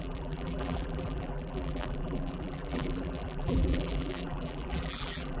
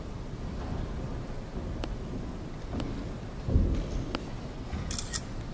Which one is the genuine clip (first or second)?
second